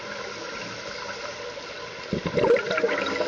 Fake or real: real